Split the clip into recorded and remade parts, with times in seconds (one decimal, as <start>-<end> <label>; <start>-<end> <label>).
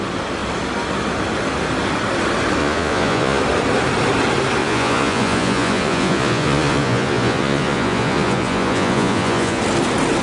0.0-2.6 recorded; 2.6-3.4 remade; 3.4-4.6 recorded; 4.6-9.6 remade; 9.6-10.2 recorded